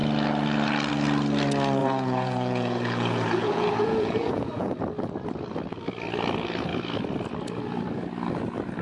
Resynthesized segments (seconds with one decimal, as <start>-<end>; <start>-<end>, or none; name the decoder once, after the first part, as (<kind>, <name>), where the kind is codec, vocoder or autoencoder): 1.8-4.7 (vocoder, Vocos)